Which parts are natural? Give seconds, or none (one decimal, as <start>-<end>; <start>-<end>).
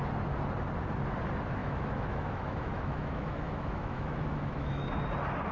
0.0-1.6; 4.9-5.5